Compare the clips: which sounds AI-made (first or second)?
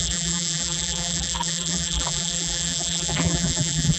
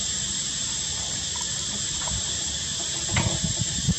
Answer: first